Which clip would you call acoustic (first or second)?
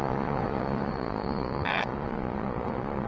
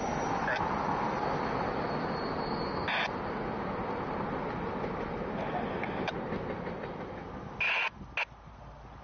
second